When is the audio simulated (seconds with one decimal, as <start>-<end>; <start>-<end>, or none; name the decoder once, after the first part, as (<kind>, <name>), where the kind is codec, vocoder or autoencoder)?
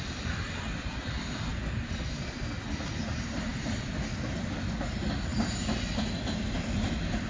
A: none